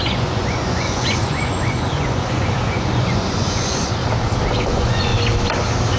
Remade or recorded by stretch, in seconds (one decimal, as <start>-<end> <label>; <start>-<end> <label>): 0.0-4.0 remade; 4.0-4.5 recorded; 4.5-5.1 remade; 5.1-6.0 recorded